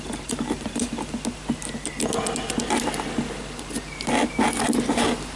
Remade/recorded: recorded